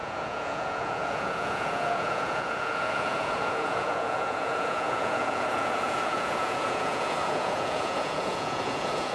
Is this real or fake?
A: fake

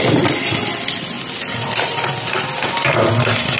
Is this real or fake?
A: real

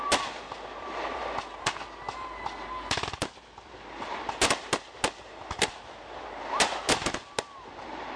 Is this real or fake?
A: real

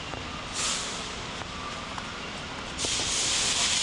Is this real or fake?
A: real